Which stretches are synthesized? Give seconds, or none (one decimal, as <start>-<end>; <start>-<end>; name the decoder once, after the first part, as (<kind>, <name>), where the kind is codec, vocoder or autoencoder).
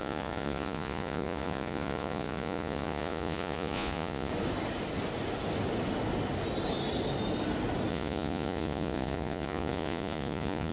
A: 0.0-4.3 (vocoder, Vocos); 7.9-10.7